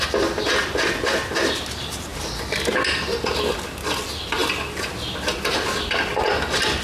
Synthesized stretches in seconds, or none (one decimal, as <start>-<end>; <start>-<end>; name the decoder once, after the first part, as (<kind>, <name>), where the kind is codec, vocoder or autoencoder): none